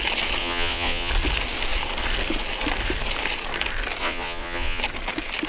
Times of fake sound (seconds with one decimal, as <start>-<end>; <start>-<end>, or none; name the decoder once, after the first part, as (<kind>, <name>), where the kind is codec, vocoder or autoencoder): 0.4-1.1 (vocoder, Vocos); 4.0-4.8